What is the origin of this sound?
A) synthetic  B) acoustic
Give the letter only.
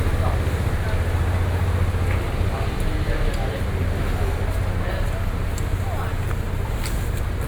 B